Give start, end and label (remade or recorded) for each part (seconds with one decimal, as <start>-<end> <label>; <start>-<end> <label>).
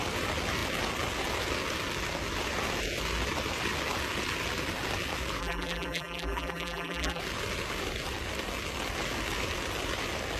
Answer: 0.0-5.4 recorded; 5.4-7.2 remade; 7.2-10.4 recorded